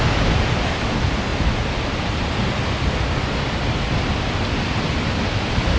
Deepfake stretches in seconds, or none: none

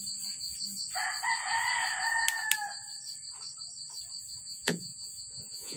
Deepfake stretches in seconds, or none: 4.4-5.8

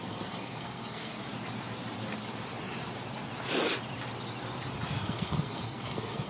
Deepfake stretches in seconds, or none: 0.0-1.2; 5.0-6.3

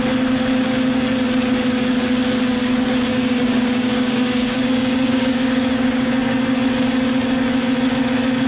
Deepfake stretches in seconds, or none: 3.1-6.1